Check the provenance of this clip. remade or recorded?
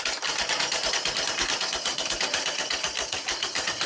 recorded